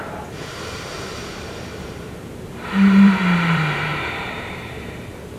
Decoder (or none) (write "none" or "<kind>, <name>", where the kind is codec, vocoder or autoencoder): vocoder, BigVGAN v2